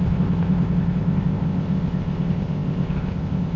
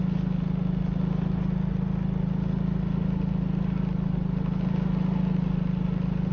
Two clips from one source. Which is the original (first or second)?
second